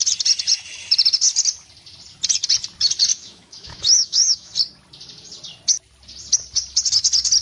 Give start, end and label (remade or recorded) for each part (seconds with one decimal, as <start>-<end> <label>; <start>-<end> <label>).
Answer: 0.0-3.1 recorded; 3.1-4.5 remade; 4.5-7.4 recorded